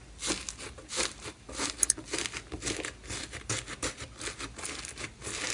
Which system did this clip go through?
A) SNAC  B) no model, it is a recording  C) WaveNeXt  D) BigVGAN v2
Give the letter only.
B